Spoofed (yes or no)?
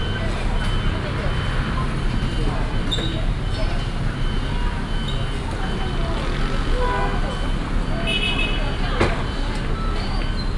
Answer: no